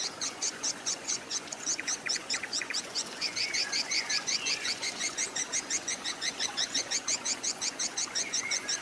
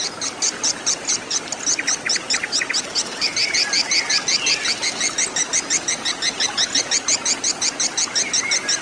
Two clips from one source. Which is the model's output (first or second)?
first